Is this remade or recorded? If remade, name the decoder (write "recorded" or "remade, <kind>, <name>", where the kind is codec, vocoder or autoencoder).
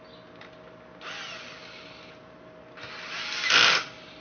recorded